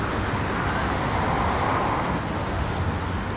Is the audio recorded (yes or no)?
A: yes